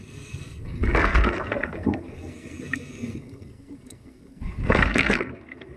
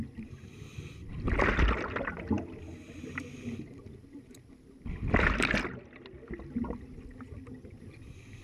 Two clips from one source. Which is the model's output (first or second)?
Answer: first